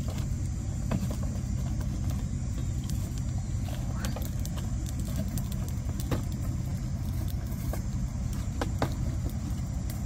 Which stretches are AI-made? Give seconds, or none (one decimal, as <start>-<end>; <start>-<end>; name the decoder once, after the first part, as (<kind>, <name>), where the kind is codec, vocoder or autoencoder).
8.1-8.8 (vocoder, BigVGAN v2)